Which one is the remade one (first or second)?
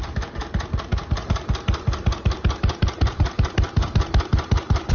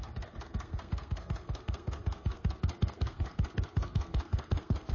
second